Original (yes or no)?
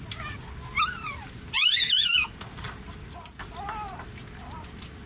yes